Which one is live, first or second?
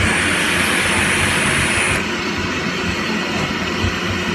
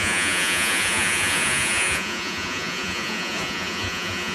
first